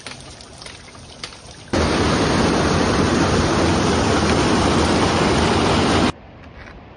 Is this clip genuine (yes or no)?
yes